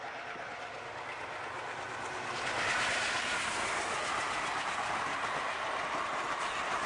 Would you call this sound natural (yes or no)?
yes